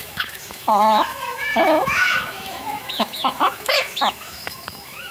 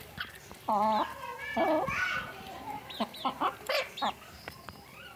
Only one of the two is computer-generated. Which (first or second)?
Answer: first